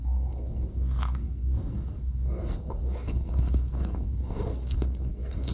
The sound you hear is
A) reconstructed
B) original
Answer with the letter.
A